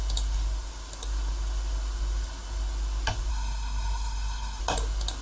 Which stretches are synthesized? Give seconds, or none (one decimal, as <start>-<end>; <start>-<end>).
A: 3.3-4.6